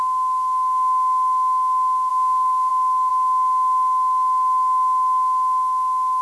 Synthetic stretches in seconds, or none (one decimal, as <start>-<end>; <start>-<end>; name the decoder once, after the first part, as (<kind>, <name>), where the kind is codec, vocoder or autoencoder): 2.1-2.7 (codec, SNAC)